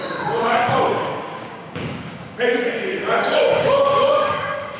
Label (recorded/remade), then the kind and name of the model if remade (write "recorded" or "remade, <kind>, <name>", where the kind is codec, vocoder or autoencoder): remade, codec, DAC